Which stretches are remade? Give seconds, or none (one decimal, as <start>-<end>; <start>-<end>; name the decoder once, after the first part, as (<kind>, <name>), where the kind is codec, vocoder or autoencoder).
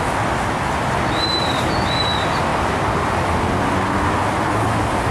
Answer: 0.8-2.0 (vocoder, BigVGAN v2); 2.5-3.9